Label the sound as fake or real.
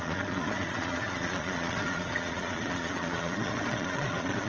fake